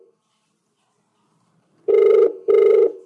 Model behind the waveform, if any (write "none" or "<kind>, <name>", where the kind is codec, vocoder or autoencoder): none